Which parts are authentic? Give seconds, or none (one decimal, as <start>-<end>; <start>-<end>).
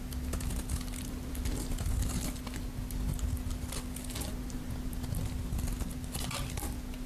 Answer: 0.0-7.1